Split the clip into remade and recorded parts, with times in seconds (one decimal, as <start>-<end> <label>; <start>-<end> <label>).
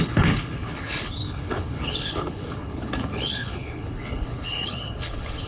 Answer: 0.0-5.5 remade